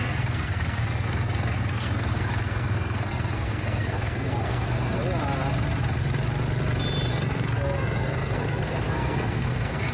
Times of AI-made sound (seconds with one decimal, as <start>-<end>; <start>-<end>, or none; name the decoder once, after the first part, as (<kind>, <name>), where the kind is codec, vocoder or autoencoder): 0.0-5.0 (codec, SNAC); 7.1-9.9